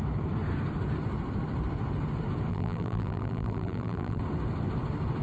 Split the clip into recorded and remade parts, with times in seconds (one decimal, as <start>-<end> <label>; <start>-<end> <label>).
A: 0.0-2.5 recorded; 2.5-4.2 remade; 4.2-5.2 recorded